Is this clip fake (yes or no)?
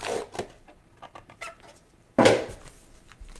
yes